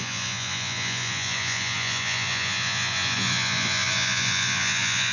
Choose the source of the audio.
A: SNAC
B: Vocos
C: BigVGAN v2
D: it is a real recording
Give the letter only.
B